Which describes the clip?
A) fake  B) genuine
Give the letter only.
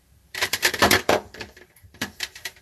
A